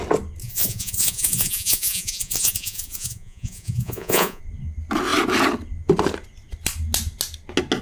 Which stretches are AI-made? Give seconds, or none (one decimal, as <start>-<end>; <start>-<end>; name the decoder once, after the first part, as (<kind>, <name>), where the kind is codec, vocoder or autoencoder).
0.4-4.4 (vocoder, Vocos)